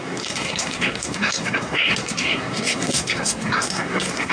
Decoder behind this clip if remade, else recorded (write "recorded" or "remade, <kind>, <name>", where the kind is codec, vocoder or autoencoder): remade, codec, SNAC